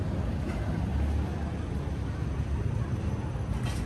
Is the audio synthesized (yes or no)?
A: no